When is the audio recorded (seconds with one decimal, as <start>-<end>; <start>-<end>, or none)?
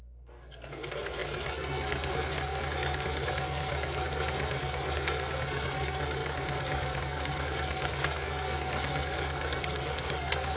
none